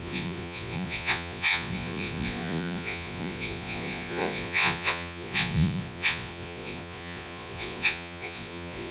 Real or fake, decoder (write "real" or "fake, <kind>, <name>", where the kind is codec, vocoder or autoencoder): fake, vocoder, Vocos